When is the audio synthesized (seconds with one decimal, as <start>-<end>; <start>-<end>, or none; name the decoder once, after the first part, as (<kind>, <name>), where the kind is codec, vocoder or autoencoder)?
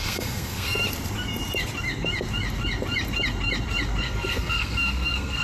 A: 0.0-0.8 (codec, SNAC); 4.0-5.4